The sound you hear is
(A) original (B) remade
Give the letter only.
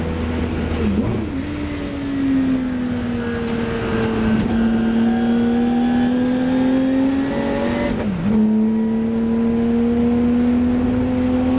A